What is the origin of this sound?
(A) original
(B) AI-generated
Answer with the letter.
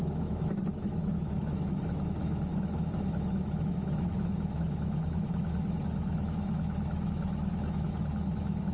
B